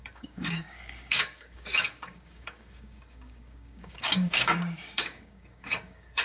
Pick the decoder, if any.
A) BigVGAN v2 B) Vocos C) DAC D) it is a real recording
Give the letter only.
C